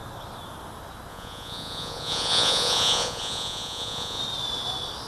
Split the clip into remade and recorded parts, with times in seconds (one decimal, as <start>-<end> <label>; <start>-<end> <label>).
0.0-1.1 recorded; 1.1-4.2 remade; 4.2-5.1 recorded